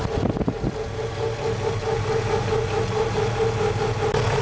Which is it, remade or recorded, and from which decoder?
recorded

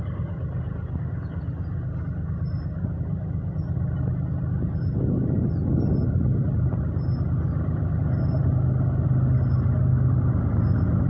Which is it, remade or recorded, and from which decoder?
recorded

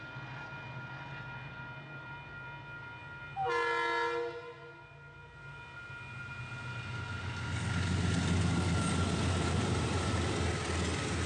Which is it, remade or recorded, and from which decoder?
recorded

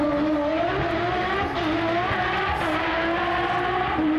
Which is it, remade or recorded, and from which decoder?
recorded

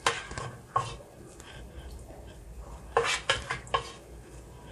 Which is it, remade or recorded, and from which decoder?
recorded